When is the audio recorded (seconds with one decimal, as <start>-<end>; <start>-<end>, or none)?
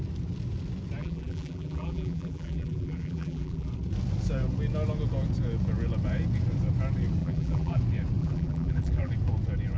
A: 0.0-1.0; 3.7-7.2; 7.8-8.2; 9.1-9.8